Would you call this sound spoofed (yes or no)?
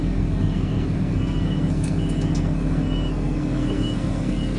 yes